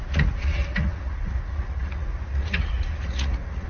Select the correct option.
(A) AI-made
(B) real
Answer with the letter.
A